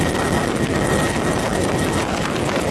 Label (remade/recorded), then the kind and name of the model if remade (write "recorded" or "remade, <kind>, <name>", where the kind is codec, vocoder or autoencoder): recorded